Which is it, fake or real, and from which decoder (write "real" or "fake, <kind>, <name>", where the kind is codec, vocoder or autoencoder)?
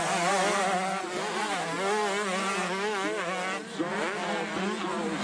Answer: real